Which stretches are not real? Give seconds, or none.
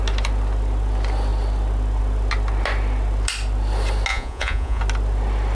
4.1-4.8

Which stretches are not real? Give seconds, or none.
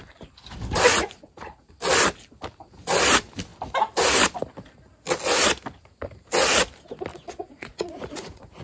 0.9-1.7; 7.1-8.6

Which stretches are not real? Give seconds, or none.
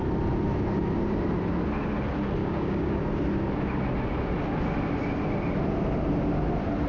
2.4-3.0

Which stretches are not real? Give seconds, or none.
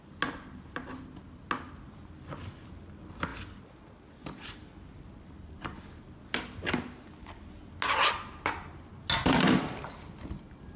none